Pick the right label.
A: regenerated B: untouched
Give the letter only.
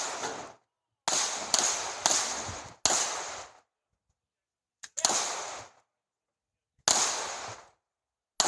B